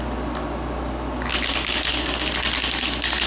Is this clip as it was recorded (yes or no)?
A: yes